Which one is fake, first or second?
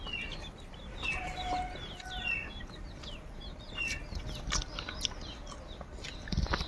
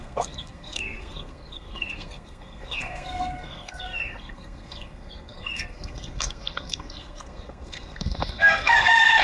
second